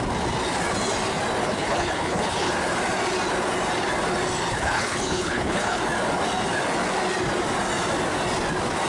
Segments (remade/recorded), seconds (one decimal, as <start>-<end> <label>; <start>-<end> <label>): 0.0-1.4 recorded; 1.4-2.5 remade; 2.5-4.5 recorded; 4.5-5.8 remade; 5.8-8.9 recorded